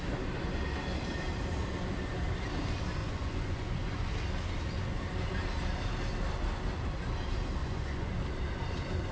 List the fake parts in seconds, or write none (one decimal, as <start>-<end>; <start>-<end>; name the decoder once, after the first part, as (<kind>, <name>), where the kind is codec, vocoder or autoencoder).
3.0-4.1 (vocoder, Vocos); 7.6-8.1